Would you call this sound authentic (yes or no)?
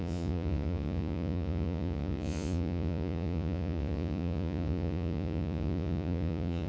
no